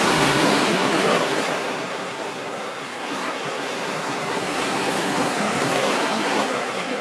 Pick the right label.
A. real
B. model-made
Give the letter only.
B